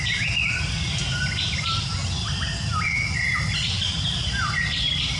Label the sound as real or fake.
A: fake